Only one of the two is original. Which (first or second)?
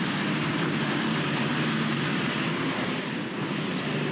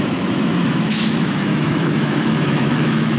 first